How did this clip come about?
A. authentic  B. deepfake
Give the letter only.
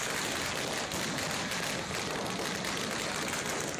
A